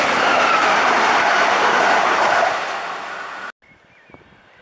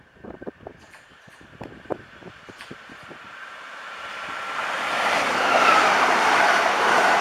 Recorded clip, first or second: first